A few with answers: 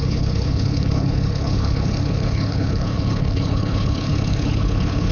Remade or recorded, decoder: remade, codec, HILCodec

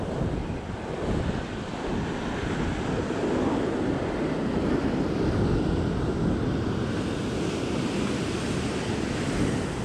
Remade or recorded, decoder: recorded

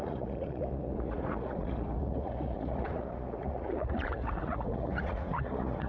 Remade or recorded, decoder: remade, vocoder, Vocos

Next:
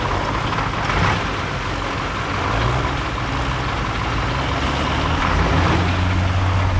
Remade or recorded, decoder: recorded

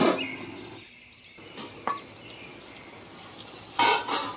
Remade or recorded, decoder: recorded